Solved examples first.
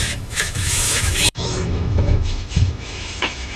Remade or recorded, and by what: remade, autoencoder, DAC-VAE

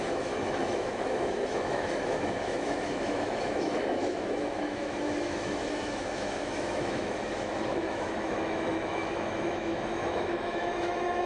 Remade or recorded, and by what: remade, autoencoder, DAC-VAE